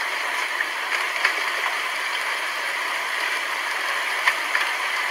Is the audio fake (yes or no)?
yes